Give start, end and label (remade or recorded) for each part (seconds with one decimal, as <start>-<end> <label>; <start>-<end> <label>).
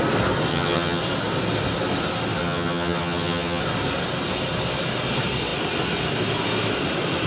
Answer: 0.0-0.5 recorded; 0.5-1.0 remade; 1.0-2.4 recorded; 2.4-3.6 remade; 3.6-7.3 recorded